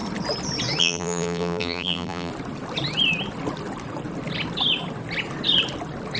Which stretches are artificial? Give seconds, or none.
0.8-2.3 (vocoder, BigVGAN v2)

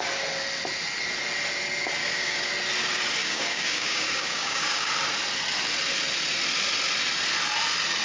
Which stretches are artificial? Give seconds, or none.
2.0-2.5 (codec, DAC); 3.2-4.9

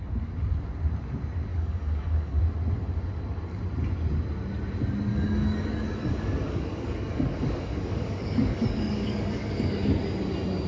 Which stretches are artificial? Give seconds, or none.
1.5-2.4 (codec, DAC); 5.1-10.0

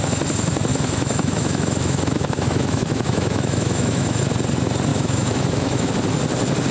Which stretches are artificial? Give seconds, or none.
0.7-4.2 (autoencoder, DAC-VAE); 4.9-5.9

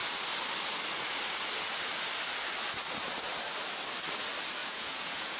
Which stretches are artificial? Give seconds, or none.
4.6-5.4 (vocoder, Vocos)

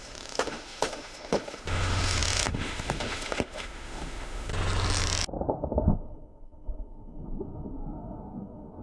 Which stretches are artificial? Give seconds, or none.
0.0-4.5 (autoencoder, DAC-VAE); 5.5-8.8